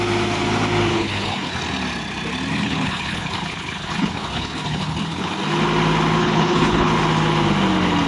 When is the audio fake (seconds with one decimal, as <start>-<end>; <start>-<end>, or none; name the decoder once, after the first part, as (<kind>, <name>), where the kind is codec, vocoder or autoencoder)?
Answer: 0.9-1.6 (codec, HILCodec); 2.5-5.3; 6.2-6.9